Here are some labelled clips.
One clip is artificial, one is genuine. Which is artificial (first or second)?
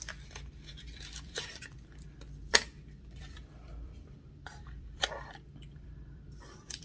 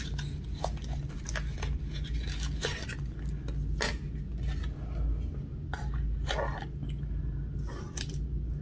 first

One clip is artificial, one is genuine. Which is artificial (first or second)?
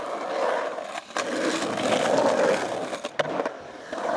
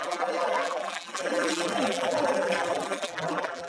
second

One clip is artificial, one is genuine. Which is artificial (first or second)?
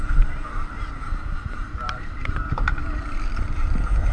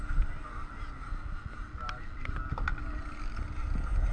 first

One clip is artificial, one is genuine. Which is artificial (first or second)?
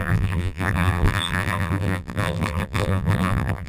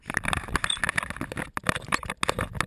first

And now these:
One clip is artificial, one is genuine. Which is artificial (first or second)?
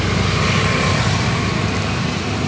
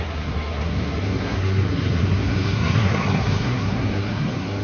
second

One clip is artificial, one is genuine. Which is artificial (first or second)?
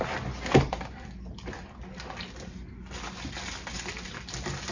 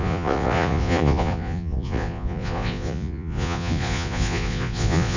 second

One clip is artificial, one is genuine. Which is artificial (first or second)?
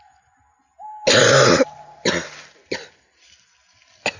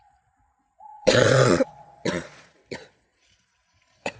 second